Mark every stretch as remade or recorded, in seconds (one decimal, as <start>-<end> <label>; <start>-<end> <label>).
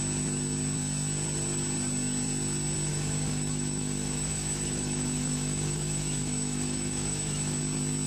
0.0-2.9 recorded; 2.9-7.6 remade; 7.6-8.1 recorded